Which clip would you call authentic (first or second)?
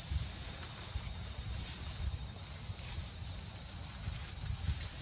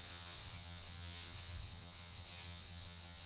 first